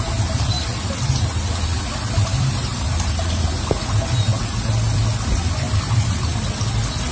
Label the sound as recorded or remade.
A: recorded